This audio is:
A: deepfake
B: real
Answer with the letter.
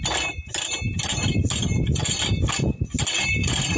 B